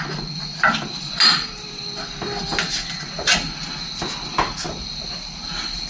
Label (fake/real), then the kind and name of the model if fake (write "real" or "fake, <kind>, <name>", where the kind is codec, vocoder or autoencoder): real